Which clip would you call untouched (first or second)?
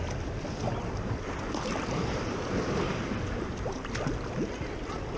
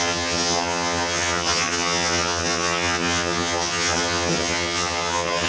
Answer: first